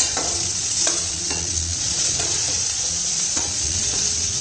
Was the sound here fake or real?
fake